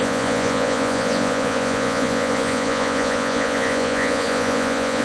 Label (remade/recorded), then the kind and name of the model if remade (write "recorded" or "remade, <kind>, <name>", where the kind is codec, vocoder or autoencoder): remade, vocoder, Vocos